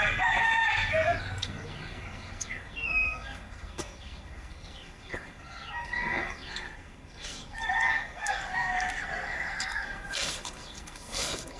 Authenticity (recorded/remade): remade